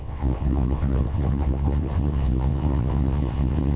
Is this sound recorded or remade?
remade